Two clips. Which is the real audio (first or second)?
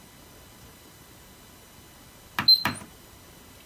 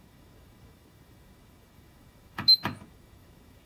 first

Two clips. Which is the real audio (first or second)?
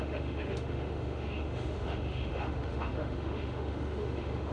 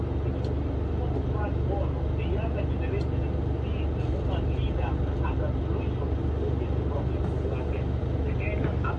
second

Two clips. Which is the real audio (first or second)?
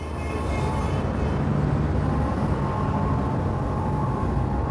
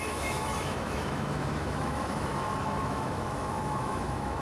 first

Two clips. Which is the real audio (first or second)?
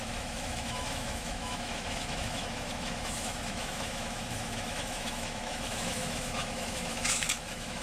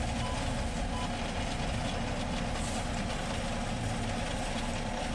second